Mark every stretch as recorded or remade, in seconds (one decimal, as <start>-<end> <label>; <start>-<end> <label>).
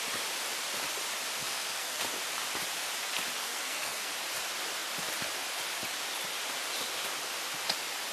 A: 0.0-1.4 recorded; 1.4-2.1 remade; 2.1-3.4 recorded; 3.4-4.1 remade; 4.1-8.1 recorded